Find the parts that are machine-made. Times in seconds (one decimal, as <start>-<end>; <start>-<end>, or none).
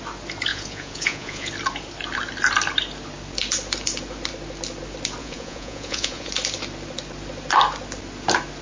0.5-1.5; 5.2-6.3